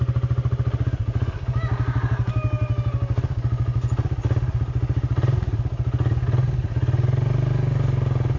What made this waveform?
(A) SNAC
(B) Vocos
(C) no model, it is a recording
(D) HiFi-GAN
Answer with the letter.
C